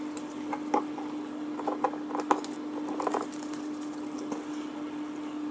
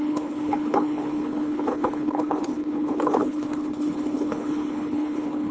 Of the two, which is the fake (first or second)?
second